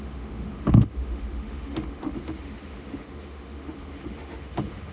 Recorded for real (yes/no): no